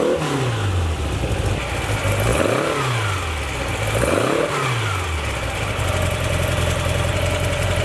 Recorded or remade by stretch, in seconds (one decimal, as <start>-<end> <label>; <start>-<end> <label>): 0.0-7.8 recorded